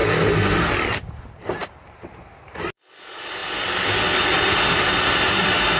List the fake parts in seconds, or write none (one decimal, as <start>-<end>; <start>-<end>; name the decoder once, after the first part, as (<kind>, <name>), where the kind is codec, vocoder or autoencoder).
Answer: none